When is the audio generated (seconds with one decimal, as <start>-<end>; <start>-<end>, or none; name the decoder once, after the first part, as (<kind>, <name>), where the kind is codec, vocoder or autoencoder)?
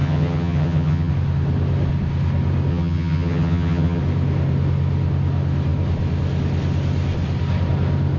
0.0-1.1 (vocoder, HiFi-GAN); 2.7-4.0